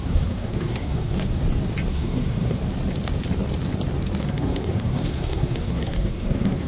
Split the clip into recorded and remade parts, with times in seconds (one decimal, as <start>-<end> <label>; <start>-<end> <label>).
0.0-1.4 remade; 1.4-1.9 recorded; 1.9-2.6 remade; 2.6-4.2 recorded; 4.2-6.7 remade